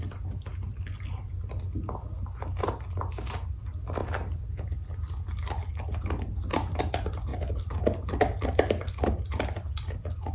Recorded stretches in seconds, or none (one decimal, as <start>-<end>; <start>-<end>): 0.0-10.3